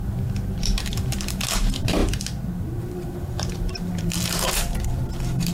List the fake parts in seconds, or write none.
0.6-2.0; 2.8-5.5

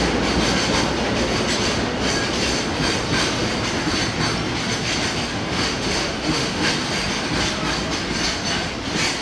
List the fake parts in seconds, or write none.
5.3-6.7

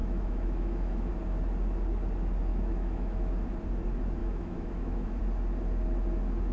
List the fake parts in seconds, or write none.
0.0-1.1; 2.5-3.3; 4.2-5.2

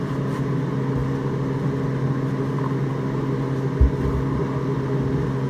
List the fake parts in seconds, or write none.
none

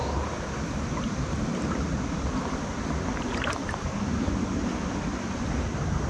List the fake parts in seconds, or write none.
none

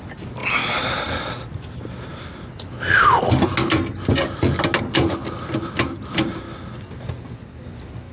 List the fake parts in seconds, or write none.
none